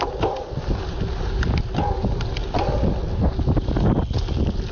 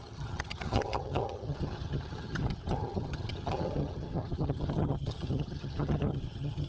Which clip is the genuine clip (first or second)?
first